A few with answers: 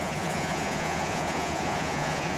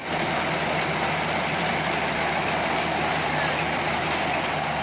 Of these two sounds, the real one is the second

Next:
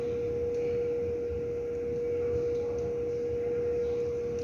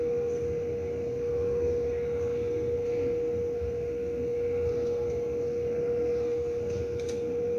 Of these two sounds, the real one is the first